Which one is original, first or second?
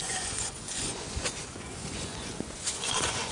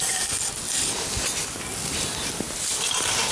second